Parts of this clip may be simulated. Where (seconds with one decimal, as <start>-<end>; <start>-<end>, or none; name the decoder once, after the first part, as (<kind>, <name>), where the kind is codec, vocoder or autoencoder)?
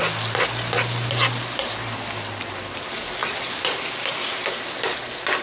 none